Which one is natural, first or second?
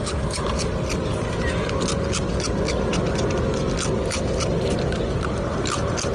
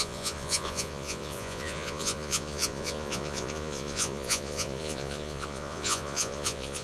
first